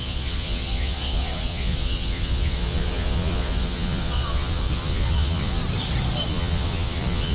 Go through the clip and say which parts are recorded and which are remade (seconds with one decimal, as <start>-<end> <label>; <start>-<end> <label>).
0.0-5.6 remade; 5.6-6.3 recorded; 6.3-7.3 remade